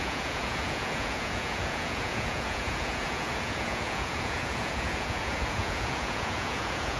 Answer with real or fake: fake